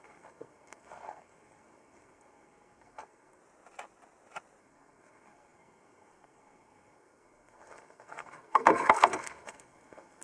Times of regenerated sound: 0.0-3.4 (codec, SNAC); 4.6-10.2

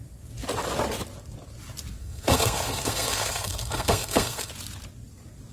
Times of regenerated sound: 2.0-4.5 (codec, SNAC)

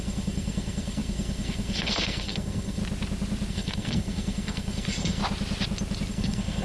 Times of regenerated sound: 0.0-2.8 (codec, SNAC); 3.5-5.2; 6.1-6.6

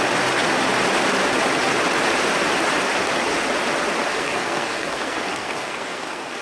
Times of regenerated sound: 4.1-6.4 (codec, SNAC)

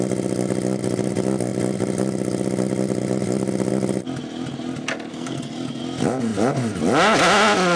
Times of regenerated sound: 5.1-5.8 (codec, SNAC)

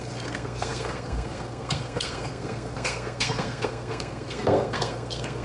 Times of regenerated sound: 0.0-5.4 (codec, SNAC)